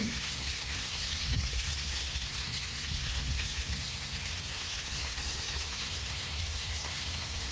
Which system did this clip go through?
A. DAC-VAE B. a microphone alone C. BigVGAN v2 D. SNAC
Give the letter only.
D